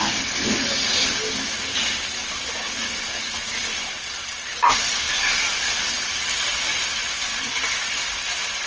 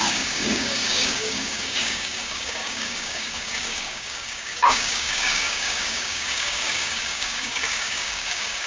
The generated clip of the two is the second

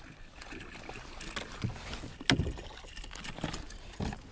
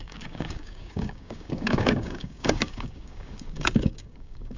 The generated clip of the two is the second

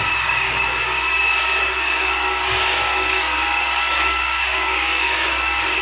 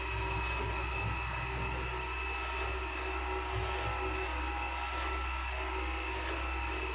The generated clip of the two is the first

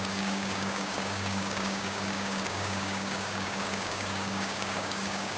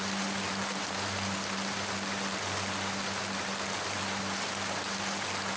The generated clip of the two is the first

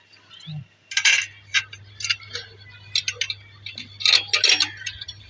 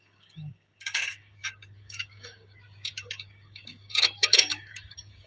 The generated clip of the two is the second